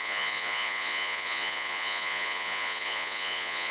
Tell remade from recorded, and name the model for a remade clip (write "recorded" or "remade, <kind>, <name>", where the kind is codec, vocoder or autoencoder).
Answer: remade, vocoder, Vocos